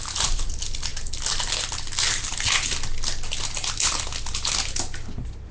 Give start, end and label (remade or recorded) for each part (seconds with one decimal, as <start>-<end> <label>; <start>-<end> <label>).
0.0-5.5 recorded